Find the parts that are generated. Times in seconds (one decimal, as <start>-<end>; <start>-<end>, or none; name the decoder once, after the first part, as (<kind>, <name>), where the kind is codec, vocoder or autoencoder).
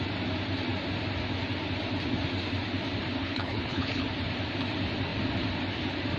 3.2-4.0 (codec, HILCodec)